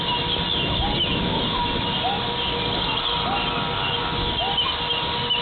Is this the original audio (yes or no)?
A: yes